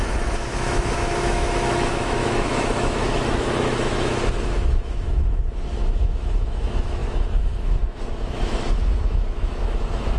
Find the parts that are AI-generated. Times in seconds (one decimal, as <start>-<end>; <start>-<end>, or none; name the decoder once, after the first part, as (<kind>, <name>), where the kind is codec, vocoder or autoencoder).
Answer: 0.0-10.2 (autoencoder, DAC-VAE)